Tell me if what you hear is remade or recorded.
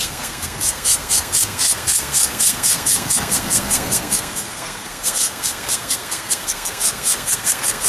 remade